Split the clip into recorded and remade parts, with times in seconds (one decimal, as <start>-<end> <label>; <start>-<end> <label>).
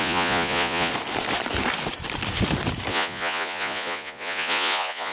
0.0-0.9 remade; 0.9-2.9 recorded; 2.9-5.1 remade